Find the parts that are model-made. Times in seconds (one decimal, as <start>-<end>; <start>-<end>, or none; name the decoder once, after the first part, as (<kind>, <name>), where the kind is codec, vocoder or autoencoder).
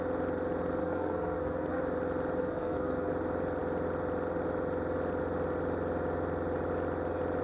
0.8-1.8 (codec, SNAC); 2.4-3.1